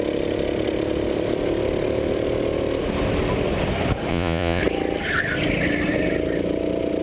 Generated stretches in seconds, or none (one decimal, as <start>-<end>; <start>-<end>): 4.1-4.6